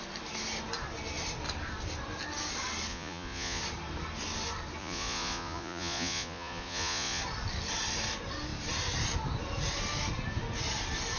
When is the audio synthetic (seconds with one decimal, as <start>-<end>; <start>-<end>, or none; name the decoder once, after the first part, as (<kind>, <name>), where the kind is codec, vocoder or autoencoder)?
2.9-3.6 (vocoder, Vocos); 4.8-7.2